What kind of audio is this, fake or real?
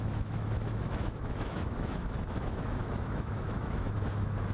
fake